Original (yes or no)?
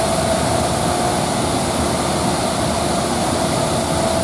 yes